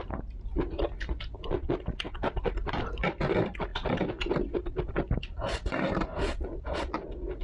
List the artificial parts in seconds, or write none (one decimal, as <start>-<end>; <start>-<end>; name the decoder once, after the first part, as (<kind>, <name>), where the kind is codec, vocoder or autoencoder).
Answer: none